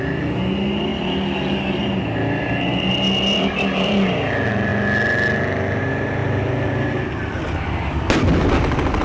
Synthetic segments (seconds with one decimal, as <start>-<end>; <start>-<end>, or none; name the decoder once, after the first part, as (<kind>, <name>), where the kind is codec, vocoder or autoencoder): none